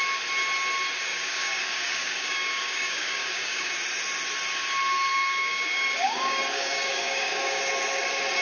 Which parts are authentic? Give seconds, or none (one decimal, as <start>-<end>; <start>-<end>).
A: 0.0-1.1; 3.7-5.1; 7.6-8.4